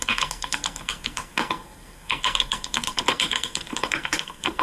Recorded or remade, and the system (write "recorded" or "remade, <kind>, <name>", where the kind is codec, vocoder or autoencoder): remade, codec, SNAC